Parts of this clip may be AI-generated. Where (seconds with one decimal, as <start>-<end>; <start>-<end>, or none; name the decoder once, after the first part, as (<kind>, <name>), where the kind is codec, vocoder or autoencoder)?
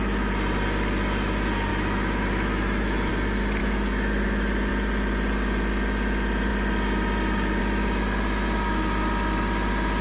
1.7-3.1 (autoencoder, DAC-VAE); 3.6-4.7